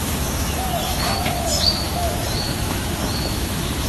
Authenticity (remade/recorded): remade